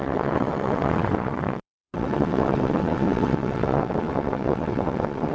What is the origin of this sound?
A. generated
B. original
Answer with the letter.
A